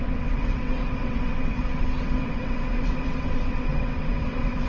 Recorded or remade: remade